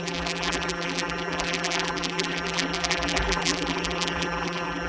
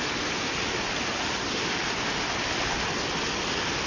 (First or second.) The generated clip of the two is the first